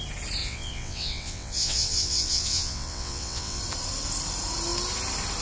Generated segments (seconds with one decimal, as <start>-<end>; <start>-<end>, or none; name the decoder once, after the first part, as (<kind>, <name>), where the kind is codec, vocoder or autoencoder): 0.4-3.6 (vocoder, WaveNeXt)